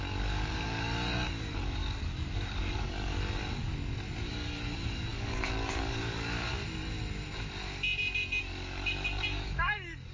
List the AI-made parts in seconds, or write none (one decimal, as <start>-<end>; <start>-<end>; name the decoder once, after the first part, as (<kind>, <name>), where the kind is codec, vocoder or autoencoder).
0.0-3.7 (codec, DAC); 4.3-6.5; 8.4-10.1